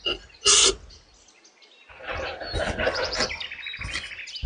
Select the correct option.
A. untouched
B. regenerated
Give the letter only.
A